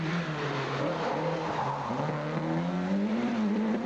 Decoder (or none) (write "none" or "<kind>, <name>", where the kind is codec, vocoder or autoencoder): none